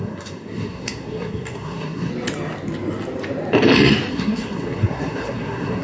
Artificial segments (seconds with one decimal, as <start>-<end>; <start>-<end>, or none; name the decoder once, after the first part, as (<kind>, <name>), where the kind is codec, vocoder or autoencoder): 0.0-2.1 (codec, SNAC); 4.1-5.8